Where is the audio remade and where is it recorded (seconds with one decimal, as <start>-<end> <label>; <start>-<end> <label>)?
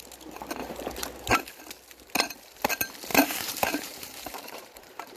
0.0-3.1 recorded; 3.1-5.2 remade